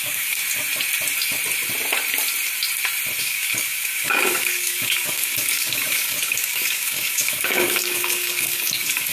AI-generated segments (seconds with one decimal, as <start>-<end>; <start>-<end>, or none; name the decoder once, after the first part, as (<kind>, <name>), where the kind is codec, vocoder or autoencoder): 0.0-0.4 (codec, DAC); 3.2-9.1

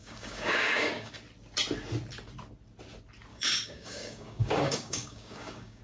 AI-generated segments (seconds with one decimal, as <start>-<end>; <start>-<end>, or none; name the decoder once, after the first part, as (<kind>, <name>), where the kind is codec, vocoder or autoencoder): 0.0-1.1 (codec, DAC); 3.3-5.8